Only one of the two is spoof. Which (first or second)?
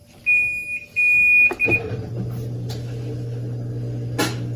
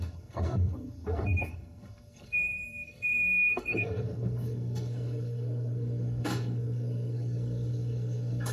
second